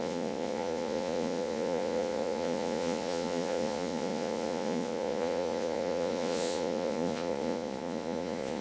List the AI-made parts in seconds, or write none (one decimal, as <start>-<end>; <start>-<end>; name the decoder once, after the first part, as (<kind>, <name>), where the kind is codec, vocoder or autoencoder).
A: 0.0-8.6 (vocoder, Vocos)